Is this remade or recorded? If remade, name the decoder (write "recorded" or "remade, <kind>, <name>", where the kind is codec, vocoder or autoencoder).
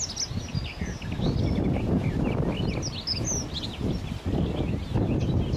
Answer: recorded